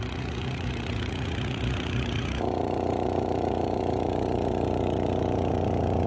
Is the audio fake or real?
fake